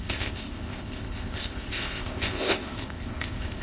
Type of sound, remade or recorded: remade